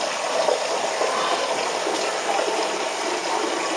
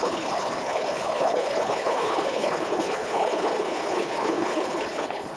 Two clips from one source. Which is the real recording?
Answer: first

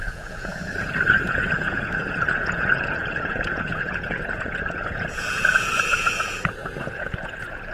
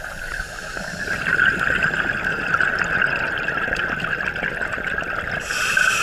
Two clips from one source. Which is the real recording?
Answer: second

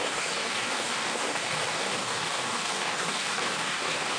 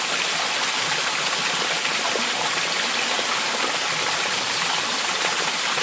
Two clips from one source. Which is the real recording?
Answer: second